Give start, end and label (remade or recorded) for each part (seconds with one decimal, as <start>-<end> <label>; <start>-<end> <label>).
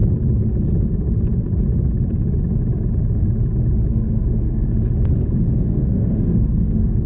0.0-3.9 recorded; 3.9-4.7 remade; 4.7-5.4 recorded; 5.4-7.1 remade